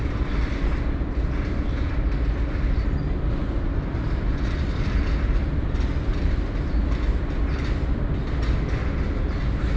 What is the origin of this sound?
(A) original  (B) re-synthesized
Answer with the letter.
A